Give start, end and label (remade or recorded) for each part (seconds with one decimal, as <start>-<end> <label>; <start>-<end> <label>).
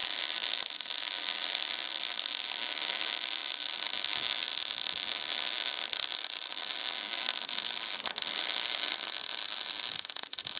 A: 0.0-10.6 recorded